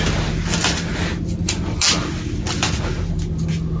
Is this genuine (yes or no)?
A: yes